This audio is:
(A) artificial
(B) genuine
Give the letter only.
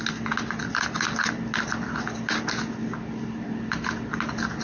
B